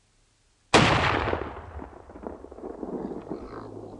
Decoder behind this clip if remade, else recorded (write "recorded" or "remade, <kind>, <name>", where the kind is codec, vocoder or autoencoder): recorded